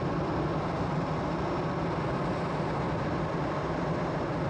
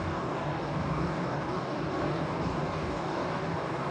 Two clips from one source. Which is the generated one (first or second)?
second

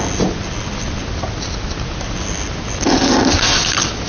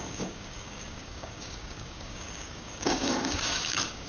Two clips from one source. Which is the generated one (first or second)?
second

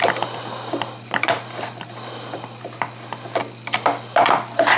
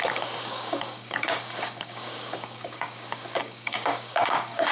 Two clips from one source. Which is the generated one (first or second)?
second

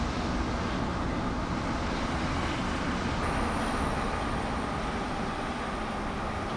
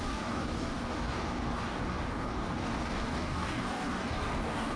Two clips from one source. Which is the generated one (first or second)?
second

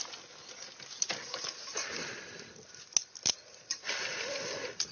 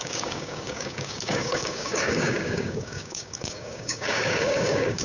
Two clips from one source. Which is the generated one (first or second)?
second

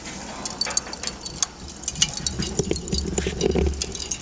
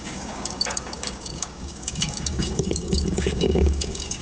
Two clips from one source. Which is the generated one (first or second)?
second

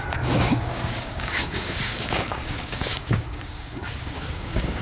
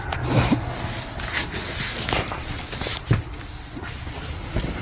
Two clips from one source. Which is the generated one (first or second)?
first